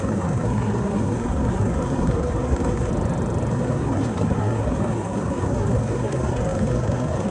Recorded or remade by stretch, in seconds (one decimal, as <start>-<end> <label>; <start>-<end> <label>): 0.0-2.9 remade; 2.9-3.5 recorded; 3.5-7.3 remade

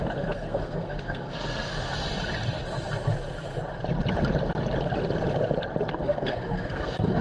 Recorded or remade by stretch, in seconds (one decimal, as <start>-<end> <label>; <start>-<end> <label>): 0.0-1.7 remade; 1.7-6.0 recorded; 6.0-7.2 remade

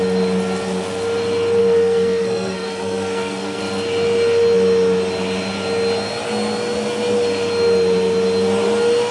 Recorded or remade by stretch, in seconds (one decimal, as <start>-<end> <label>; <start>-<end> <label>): 0.0-1.6 recorded; 1.6-3.6 remade; 3.6-9.1 recorded